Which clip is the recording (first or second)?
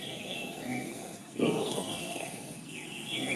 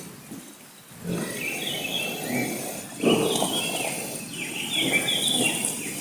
second